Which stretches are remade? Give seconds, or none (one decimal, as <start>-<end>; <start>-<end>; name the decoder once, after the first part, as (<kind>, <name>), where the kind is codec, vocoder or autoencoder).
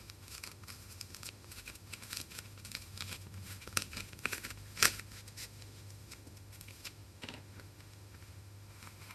0.0-9.1 (autoencoder, DAC-VAE)